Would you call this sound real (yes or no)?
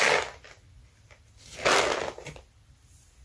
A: yes